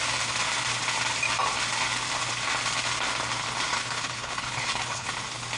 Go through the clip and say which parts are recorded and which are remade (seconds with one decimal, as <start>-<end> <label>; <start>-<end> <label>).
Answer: 0.0-3.7 recorded; 3.7-5.1 remade; 5.1-5.6 recorded